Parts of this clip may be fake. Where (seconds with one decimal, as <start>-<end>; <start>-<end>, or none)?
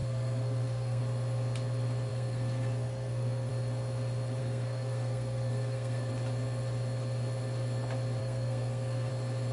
0.0-1.0; 2.1-3.5; 4.4-6.1; 8.2-9.1